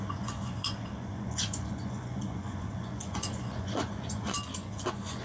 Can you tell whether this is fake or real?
fake